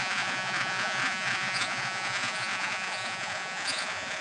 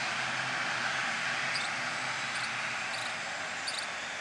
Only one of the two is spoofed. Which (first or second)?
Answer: first